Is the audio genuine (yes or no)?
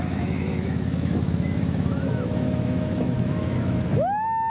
no